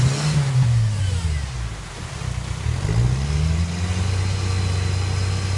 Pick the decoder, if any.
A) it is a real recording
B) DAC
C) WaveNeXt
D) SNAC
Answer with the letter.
A